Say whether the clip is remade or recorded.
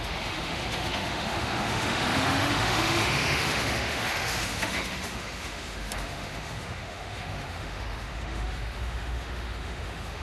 remade